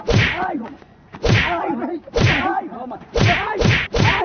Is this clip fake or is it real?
fake